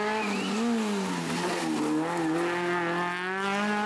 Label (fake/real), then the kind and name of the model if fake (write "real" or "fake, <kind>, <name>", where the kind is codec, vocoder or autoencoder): real